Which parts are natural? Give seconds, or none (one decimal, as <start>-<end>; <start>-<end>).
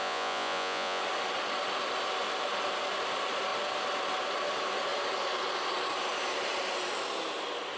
1.0-7.8